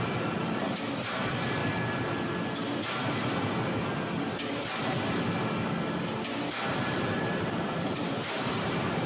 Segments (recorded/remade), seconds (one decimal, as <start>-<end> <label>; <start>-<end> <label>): 0.0-1.6 remade; 1.6-6.7 recorded; 6.7-9.1 remade